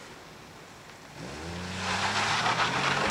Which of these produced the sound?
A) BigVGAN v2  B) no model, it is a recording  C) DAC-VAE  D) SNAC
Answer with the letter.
B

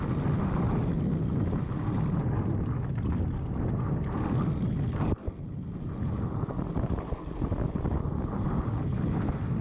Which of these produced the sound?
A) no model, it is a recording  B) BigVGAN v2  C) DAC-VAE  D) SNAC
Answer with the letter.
A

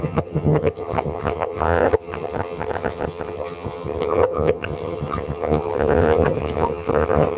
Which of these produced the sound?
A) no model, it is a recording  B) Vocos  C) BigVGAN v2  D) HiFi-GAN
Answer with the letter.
D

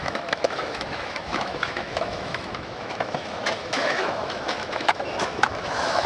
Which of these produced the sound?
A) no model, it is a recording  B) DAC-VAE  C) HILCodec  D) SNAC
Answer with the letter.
B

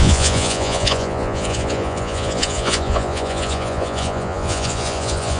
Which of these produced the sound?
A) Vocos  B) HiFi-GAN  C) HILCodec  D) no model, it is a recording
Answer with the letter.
A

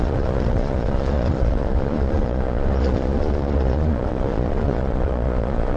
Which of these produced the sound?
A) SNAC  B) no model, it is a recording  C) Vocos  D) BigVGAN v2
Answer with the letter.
C